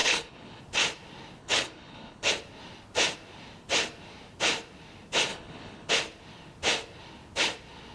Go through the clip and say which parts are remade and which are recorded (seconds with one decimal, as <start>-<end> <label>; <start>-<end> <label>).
0.0-0.6 remade; 0.6-1.4 recorded; 1.4-2.3 remade; 2.3-5.3 recorded; 5.3-5.9 remade; 5.9-7.9 recorded